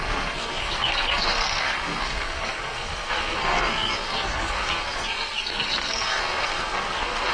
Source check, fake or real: fake